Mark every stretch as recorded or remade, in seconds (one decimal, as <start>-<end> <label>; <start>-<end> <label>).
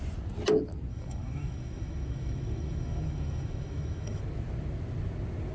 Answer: 0.0-0.9 recorded; 0.9-4.2 remade; 4.2-5.5 recorded